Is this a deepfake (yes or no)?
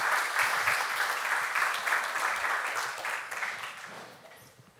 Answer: yes